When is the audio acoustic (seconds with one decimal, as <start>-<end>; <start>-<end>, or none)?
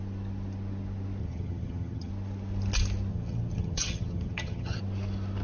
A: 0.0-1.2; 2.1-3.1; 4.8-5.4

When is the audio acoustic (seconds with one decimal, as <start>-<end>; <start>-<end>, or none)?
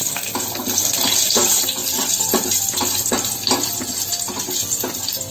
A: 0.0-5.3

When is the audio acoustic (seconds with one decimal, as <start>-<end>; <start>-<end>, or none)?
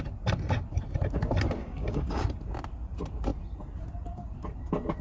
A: 0.0-1.6; 2.2-5.0